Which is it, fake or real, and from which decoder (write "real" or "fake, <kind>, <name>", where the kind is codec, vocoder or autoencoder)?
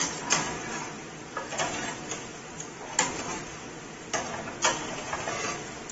real